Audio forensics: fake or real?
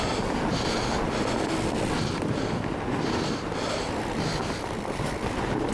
real